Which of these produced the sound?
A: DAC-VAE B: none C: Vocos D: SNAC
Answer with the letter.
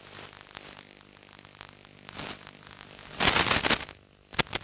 B